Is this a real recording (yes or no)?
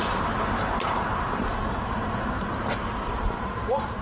no